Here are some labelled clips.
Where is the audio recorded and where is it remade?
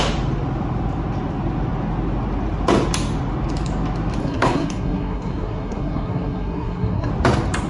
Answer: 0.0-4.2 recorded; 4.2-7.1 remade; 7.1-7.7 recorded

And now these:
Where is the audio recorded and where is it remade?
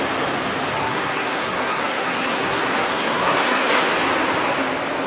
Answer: 0.0-0.8 recorded; 0.8-3.9 remade; 3.9-5.1 recorded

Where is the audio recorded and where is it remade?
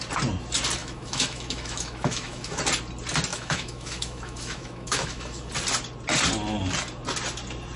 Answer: 0.0-0.8 recorded; 0.8-2.6 remade; 2.6-3.3 recorded; 3.3-5.5 remade; 5.5-7.8 recorded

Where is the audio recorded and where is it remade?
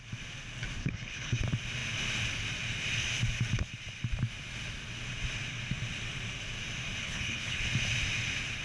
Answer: 0.0-0.8 recorded; 0.8-1.4 remade; 1.4-7.0 recorded; 7.0-7.6 remade; 7.6-8.6 recorded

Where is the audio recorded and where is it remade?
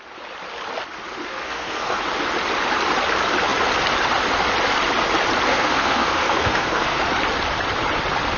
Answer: 0.0-1.3 recorded; 1.3-2.0 remade; 2.0-5.5 recorded; 5.5-7.0 remade; 7.0-8.4 recorded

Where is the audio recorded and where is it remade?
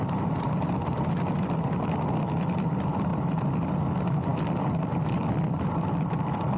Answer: 0.0-6.6 recorded